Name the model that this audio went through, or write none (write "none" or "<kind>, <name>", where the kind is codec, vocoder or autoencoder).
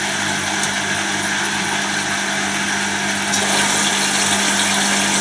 none